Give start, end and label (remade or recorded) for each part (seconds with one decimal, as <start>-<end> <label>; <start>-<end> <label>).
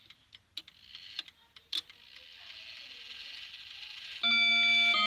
0.0-5.1 recorded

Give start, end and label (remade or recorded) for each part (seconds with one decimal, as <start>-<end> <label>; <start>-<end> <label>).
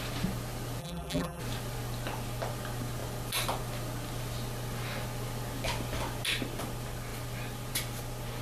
0.0-0.8 recorded; 0.8-1.4 remade; 1.4-8.4 recorded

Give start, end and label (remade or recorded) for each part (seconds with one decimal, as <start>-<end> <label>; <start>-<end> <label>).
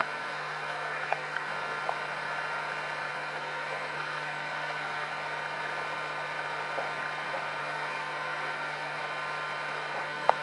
0.0-1.5 remade; 1.5-3.1 recorded; 3.1-5.1 remade; 5.1-7.6 recorded; 7.6-9.0 remade; 9.0-10.0 recorded; 10.0-10.4 remade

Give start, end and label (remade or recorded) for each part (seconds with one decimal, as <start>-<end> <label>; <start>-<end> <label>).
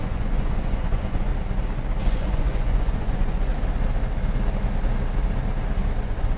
0.0-1.3 remade; 1.3-2.0 recorded; 2.0-3.5 remade; 3.5-6.0 recorded; 6.0-6.4 remade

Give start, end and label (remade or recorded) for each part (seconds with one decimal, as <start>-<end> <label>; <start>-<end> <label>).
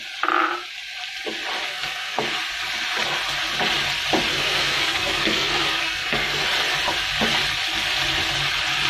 0.0-1.7 recorded; 1.7-2.2 remade; 2.2-4.3 recorded; 4.3-6.4 remade; 6.4-8.9 recorded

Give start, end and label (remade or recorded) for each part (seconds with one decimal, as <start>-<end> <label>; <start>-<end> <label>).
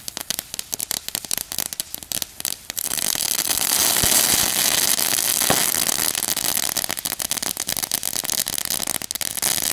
0.0-0.8 recorded; 0.8-4.6 remade; 4.6-9.7 recorded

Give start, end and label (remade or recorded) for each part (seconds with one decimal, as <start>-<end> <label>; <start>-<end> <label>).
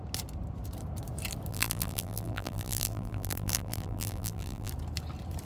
0.0-1.5 recorded; 1.5-4.7 remade; 4.7-5.4 recorded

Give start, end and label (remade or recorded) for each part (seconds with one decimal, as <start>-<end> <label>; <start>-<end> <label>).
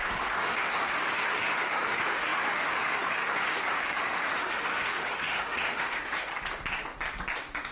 0.0-6.3 remade; 6.3-7.7 recorded